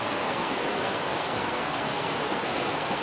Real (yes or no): no